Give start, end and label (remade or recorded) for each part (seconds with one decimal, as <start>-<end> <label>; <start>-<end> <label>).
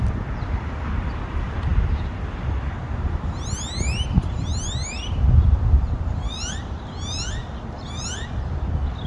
0.0-9.1 recorded